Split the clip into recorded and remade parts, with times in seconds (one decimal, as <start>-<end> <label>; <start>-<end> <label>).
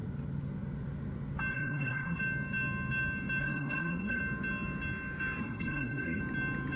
0.0-1.5 recorded; 1.5-2.2 remade; 2.2-3.4 recorded; 3.4-4.2 remade; 4.2-5.4 recorded; 5.4-6.2 remade; 6.2-6.8 recorded